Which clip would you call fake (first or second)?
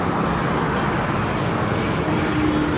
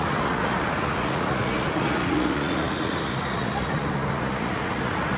second